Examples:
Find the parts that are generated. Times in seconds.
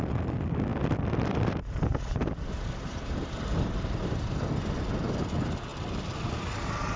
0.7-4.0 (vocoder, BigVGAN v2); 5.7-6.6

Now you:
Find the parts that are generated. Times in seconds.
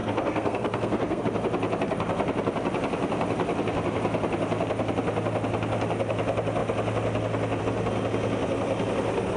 0.0-1.2 (codec, SNAC)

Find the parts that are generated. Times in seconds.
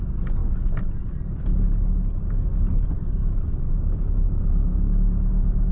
none